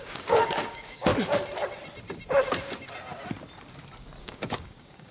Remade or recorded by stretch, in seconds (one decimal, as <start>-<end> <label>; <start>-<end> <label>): 0.0-1.1 remade; 1.1-4.2 recorded; 4.2-5.1 remade